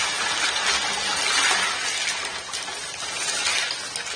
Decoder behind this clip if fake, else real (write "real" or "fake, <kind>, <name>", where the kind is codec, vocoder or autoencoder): real